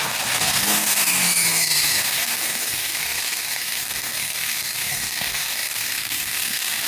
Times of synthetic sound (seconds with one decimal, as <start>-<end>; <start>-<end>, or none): 0.0-6.9